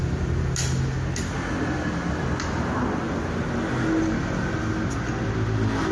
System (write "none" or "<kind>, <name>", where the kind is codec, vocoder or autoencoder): none